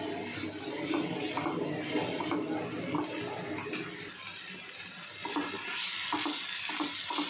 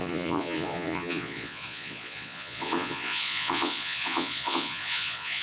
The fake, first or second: second